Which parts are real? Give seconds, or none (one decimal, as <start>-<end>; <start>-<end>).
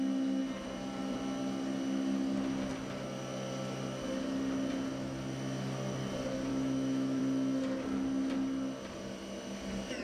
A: 0.0-6.5; 7.2-10.0